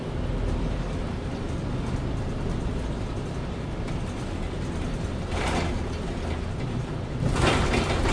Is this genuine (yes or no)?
yes